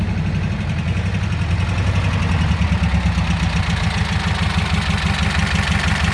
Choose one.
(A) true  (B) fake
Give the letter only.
A